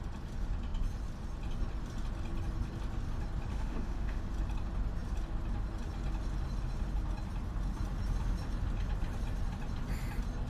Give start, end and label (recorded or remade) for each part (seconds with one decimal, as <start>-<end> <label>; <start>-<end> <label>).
0.0-3.5 recorded; 3.5-4.2 remade; 4.2-10.5 recorded